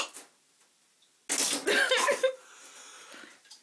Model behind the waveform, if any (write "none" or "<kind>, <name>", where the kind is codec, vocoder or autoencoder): none